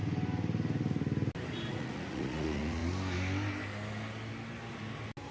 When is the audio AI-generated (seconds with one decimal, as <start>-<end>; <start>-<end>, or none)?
1.7-2.8

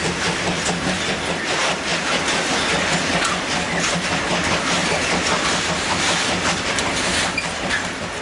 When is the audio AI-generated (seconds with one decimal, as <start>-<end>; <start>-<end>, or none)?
4.8-6.8